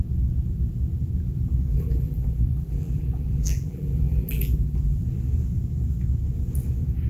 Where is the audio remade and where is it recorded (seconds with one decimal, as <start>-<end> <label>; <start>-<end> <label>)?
0.0-1.7 recorded; 1.7-5.0 remade; 5.0-7.1 recorded